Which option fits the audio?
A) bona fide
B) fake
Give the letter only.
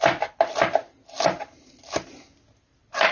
A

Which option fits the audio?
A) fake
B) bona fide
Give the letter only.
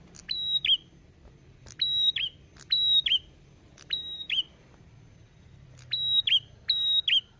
B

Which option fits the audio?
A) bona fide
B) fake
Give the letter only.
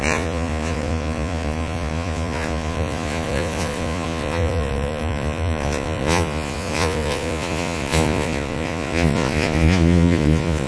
B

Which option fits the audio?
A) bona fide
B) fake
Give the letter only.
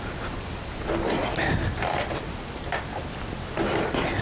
A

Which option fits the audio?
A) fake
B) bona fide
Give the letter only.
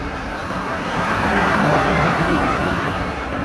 A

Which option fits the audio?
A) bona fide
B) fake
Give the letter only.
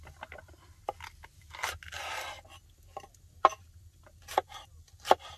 A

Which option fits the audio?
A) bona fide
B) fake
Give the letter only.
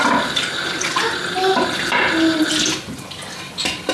A